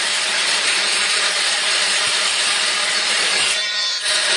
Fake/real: fake